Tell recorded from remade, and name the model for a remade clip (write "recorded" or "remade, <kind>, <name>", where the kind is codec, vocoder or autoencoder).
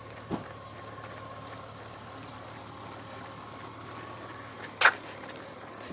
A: recorded